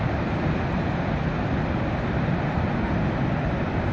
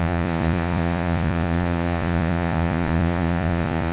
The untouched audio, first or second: first